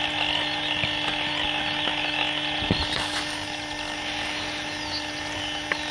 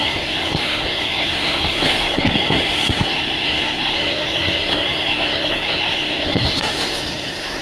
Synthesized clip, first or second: second